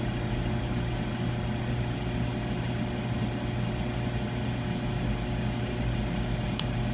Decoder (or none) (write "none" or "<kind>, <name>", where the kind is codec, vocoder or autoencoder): none